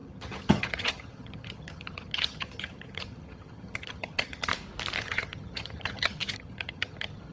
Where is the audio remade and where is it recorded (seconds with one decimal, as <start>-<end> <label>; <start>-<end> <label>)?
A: 0.0-4.5 remade; 4.5-5.0 recorded; 5.0-7.3 remade